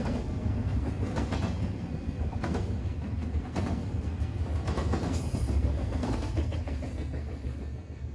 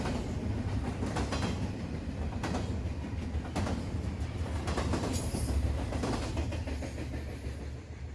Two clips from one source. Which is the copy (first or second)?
first